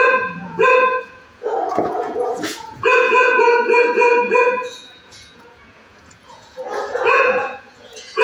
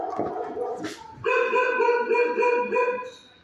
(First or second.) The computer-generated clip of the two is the first